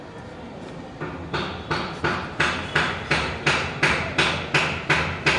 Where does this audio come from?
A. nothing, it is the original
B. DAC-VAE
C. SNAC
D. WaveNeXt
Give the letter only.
A